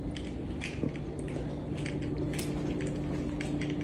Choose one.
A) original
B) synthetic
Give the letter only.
A